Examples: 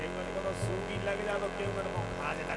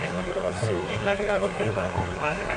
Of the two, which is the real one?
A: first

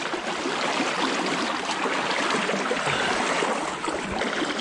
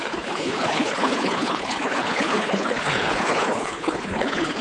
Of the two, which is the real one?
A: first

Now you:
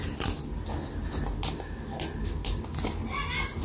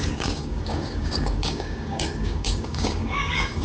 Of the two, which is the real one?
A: first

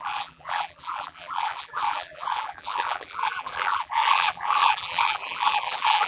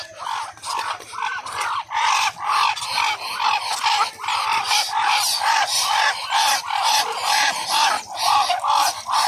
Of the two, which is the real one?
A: second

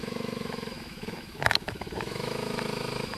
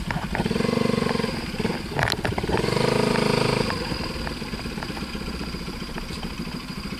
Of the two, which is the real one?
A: second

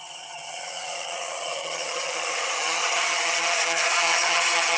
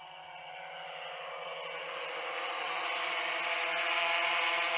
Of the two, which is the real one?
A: second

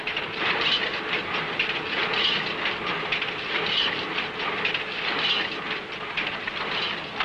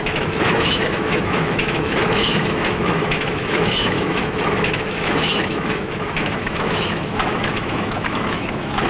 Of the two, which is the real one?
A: first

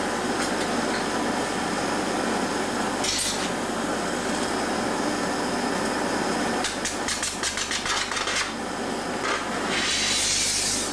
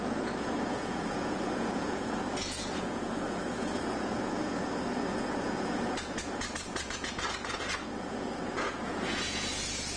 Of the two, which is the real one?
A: first